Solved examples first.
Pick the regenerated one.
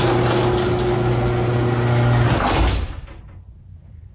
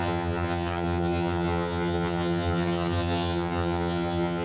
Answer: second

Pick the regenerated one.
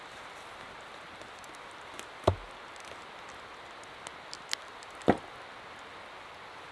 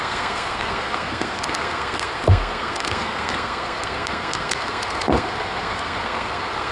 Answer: second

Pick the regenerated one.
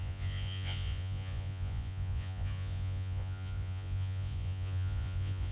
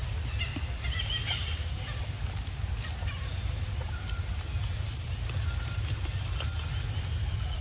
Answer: first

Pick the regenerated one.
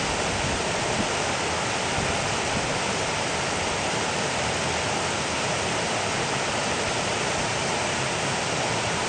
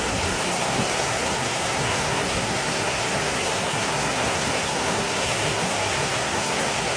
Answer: second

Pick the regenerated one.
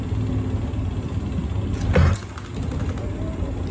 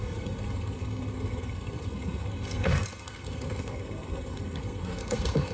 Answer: second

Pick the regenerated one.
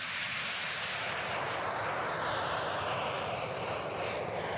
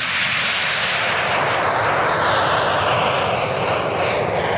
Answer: first